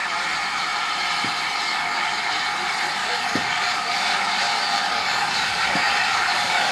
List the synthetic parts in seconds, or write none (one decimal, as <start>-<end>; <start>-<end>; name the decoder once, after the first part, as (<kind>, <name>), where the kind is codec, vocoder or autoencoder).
1.7-2.3 (codec, DAC); 3.0-6.7